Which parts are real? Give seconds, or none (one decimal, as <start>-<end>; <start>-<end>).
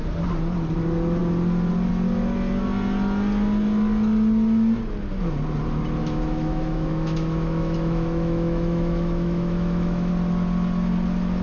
0.0-6.0; 10.1-11.4